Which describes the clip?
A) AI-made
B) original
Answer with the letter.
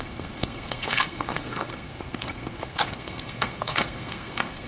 A